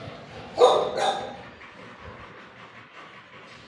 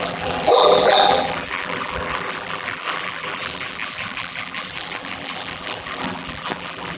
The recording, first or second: first